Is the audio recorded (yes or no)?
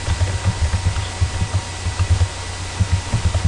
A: yes